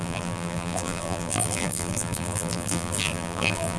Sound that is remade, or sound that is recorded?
remade